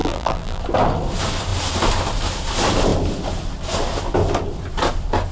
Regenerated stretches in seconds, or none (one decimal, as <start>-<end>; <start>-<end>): 0.0-0.6

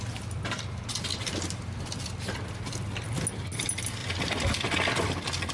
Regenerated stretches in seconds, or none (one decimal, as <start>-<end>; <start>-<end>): 1.1-3.2; 4.0-5.5

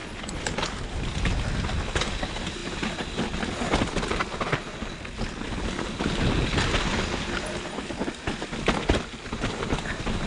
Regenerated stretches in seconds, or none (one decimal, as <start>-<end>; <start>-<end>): none